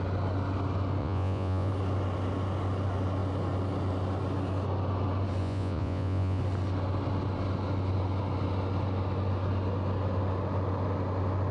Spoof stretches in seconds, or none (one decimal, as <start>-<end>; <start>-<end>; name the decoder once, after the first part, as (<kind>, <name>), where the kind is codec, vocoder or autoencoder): 1.0-1.7 (vocoder, Vocos); 5.4-6.4